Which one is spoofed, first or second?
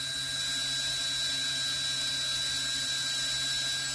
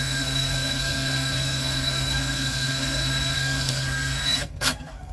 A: second